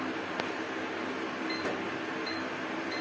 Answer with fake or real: real